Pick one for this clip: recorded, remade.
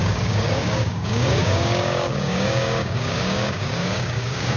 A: remade